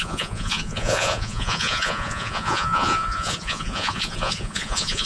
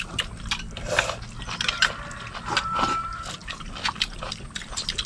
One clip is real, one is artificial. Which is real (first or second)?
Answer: second